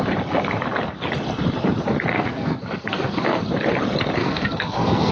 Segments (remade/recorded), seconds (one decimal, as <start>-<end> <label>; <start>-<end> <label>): 0.0-2.1 recorded; 2.1-3.4 remade; 3.4-4.2 recorded; 4.2-5.1 remade